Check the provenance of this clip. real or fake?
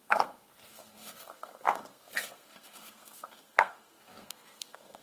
fake